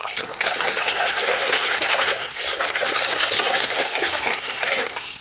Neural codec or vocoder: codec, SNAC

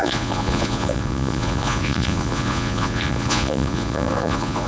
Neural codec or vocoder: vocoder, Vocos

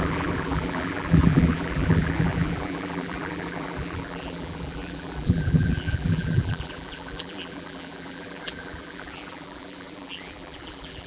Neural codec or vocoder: vocoder, BigVGAN v2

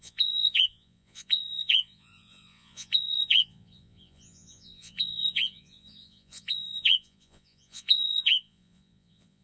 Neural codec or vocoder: vocoder, Vocos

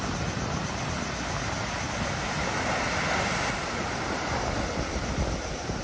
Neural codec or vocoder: none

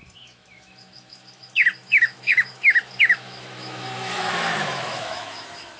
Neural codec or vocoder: autoencoder, DAC-VAE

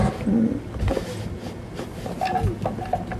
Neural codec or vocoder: none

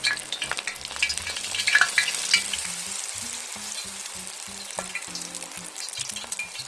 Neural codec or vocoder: none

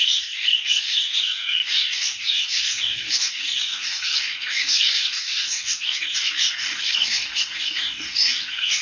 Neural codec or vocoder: codec, DAC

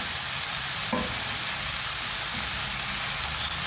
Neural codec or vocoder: none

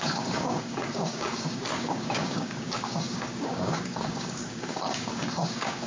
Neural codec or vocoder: codec, DAC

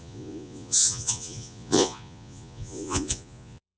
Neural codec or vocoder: vocoder, Vocos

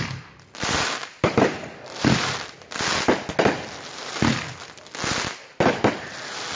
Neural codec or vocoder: none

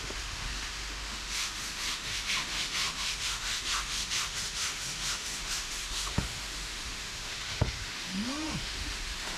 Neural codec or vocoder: autoencoder, DAC-VAE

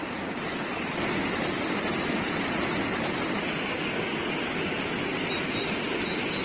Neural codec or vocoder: none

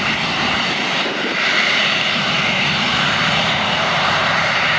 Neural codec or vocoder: vocoder, BigVGAN v2